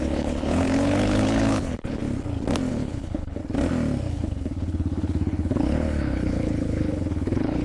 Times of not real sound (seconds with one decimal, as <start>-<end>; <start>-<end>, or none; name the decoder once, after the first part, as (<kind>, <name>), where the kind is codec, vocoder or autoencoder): 0.0-2.0 (codec, HILCodec); 2.7-3.4; 4.1-7.6